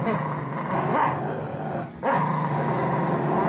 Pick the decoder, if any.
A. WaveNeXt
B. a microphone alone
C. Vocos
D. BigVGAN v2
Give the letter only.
B